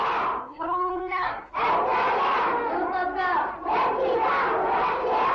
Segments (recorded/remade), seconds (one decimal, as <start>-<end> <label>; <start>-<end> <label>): 0.0-0.4 recorded; 0.4-1.5 remade; 1.5-5.3 recorded